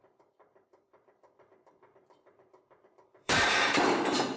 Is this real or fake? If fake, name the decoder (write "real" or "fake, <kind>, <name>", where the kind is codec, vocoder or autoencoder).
fake, vocoder, BigVGAN v2